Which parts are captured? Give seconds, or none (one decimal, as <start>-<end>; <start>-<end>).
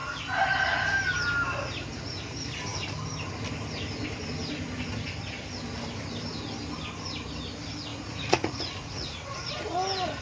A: 0.0-7.9; 9.5-10.2